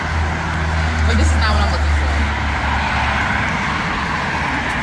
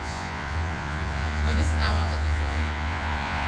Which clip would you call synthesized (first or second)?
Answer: second